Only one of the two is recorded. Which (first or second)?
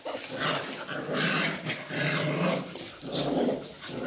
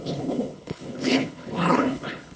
first